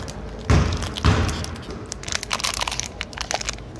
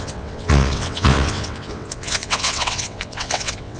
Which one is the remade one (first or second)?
second